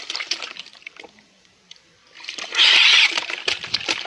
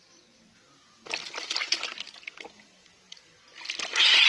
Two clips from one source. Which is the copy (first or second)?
first